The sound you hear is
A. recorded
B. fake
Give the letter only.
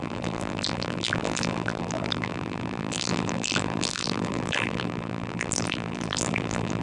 B